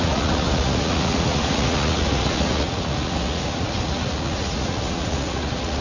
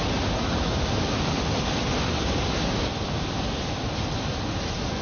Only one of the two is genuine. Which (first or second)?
second